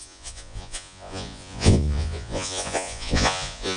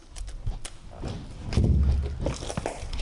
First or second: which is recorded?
second